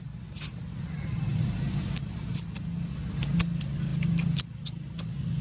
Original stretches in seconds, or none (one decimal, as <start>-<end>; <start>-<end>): 0.0-5.4